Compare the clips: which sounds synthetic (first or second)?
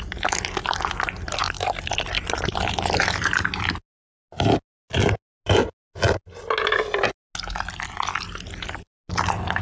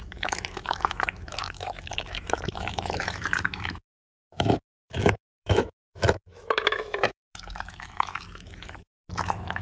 second